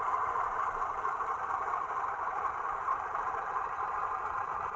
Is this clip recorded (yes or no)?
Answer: no